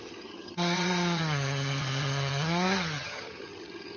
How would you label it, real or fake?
fake